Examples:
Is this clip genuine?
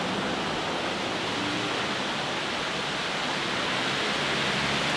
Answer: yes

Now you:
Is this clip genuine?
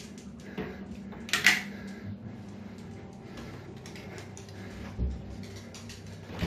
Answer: yes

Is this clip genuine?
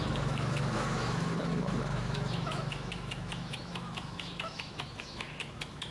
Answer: no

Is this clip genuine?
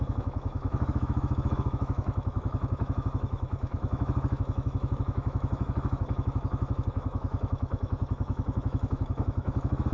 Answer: no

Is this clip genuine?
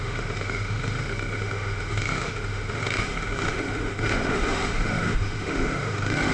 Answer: no